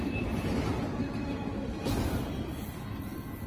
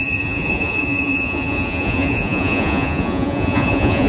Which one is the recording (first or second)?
first